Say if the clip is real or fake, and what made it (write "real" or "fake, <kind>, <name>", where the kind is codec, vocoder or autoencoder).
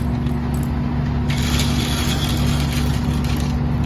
real